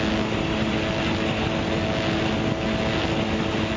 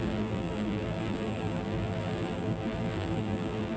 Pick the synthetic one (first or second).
second